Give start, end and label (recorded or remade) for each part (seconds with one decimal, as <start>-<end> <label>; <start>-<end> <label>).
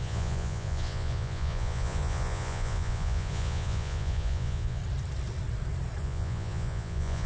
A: 0.0-4.8 remade; 4.8-6.0 recorded; 6.0-7.3 remade